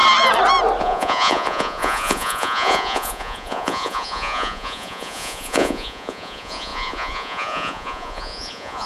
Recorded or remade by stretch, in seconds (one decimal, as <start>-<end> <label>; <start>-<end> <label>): 0.0-0.8 recorded; 0.8-8.9 remade

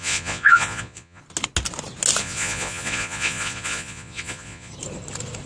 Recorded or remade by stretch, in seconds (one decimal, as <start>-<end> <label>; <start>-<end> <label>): 0.0-1.2 remade; 1.2-2.2 recorded; 2.2-4.7 remade; 4.7-5.5 recorded

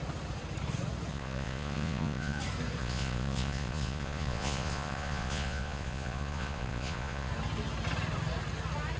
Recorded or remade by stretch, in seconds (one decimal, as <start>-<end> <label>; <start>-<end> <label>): 0.0-1.1 recorded; 1.1-2.4 remade; 2.4-2.8 recorded; 2.8-7.3 remade; 7.3-9.0 recorded

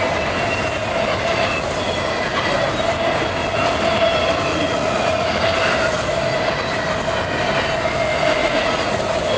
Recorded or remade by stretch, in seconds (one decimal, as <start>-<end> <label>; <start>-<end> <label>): 0.0-1.1 recorded; 1.1-1.7 remade; 1.7-4.5 recorded; 4.5-5.4 remade; 5.4-8.4 recorded; 8.4-9.0 remade; 9.0-9.4 recorded

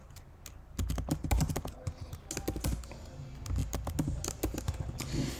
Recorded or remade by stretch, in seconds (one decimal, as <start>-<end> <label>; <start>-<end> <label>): 0.0-5.4 recorded

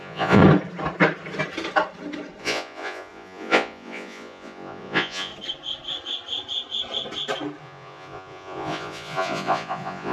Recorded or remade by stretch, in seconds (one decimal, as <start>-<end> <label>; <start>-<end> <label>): 0.0-0.4 remade; 0.4-2.4 recorded; 2.4-5.3 remade; 5.3-7.6 recorded; 7.6-10.1 remade